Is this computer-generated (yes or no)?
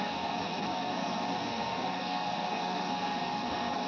yes